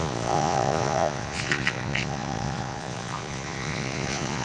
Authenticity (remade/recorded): remade